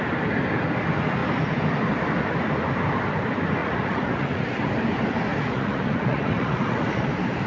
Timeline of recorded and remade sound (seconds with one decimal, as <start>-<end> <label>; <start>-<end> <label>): 0.0-3.6 recorded; 3.6-4.7 remade; 4.7-5.3 recorded; 5.3-7.0 remade; 7.0-7.5 recorded